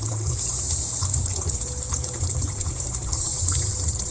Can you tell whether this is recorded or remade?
remade